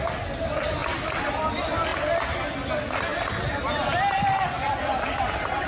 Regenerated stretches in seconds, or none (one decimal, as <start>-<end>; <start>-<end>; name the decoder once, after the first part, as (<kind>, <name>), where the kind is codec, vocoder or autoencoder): 0.8-1.3 (vocoder, BigVGAN v2)